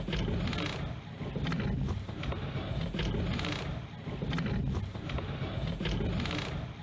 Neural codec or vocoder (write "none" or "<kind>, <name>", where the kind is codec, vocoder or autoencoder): none